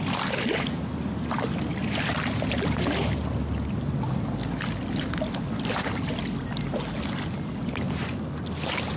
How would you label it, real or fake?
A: real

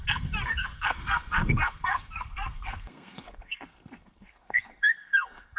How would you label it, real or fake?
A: fake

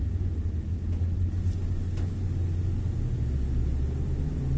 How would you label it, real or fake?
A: real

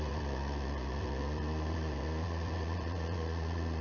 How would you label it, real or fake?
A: fake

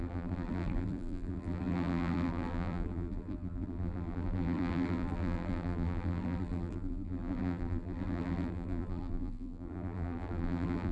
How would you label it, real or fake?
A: fake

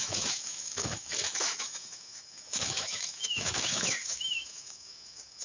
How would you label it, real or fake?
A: fake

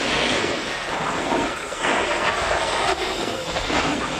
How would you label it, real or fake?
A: fake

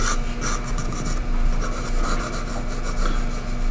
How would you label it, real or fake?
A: real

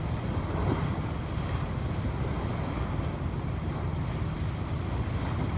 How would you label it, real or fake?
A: real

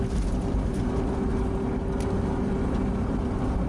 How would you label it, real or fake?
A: real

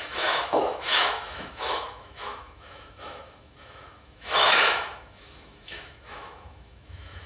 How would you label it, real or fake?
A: fake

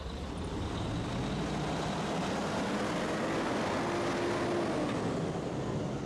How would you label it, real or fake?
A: real